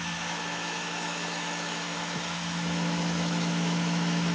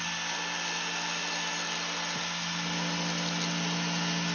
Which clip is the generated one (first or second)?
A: first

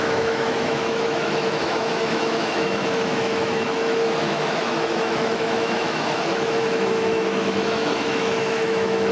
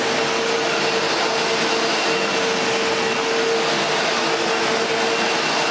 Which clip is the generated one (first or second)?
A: first